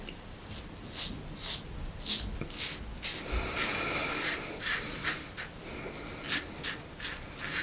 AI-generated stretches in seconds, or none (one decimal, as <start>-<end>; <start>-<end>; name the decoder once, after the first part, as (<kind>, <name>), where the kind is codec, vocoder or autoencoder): 4.0-5.2 (vocoder, BigVGAN v2)